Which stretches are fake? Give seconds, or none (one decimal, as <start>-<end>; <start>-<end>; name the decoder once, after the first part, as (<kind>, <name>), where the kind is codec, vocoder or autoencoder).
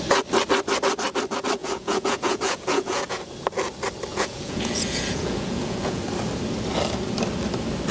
1.6-3.2 (vocoder, Vocos); 4.1-6.0